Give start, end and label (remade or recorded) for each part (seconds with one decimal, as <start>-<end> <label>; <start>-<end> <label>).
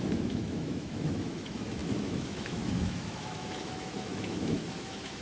0.0-5.2 remade